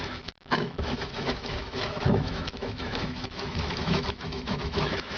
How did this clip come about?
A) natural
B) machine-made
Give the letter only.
B